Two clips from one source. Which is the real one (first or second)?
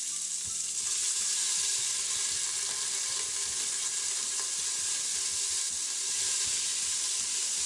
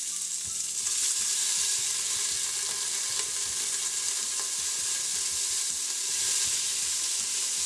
second